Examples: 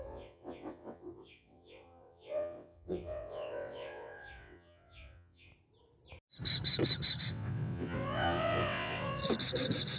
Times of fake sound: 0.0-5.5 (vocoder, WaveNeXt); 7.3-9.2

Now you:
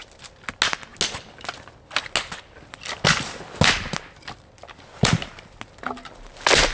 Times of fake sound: none

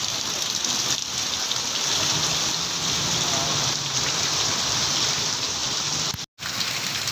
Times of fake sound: none

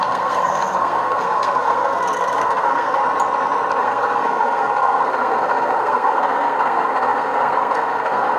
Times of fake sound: 0.0-3.0 (codec, SNAC); 3.8-8.4

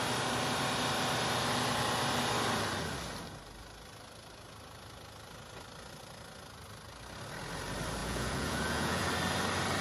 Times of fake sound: 8.0-9.1 (vocoder, Vocos)

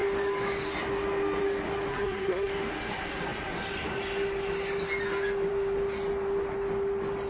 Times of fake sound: 1.9-2.5 (codec, SNAC)